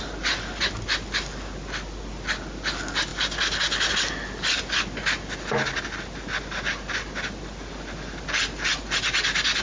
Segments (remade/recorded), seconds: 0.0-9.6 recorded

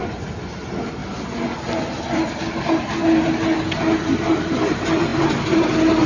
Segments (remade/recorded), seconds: 0.0-6.1 recorded

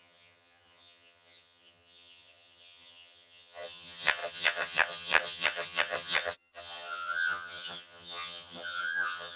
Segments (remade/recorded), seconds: 0.0-9.4 remade

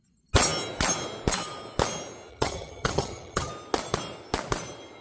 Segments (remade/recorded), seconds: 0.0-2.3 recorded; 2.3-3.5 remade; 3.5-5.0 recorded

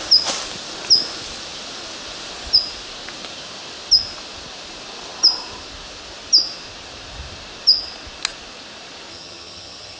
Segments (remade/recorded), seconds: 0.0-9.1 recorded; 9.1-10.0 remade

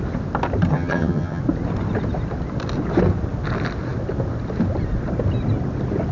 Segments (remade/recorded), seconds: 0.0-0.7 recorded; 0.7-1.4 remade; 1.4-6.1 recorded

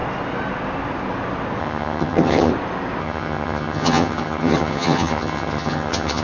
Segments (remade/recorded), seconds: 0.0-1.6 recorded; 1.6-2.5 remade; 2.5-3.0 recorded; 3.0-6.2 remade

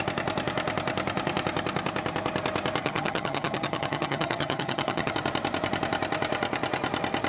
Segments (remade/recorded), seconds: 0.0-2.8 recorded; 2.8-5.1 remade; 5.1-7.3 recorded